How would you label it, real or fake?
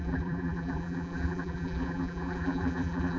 fake